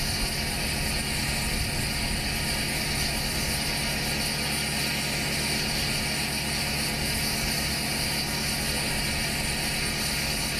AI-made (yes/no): no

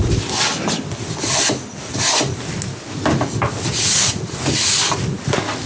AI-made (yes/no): no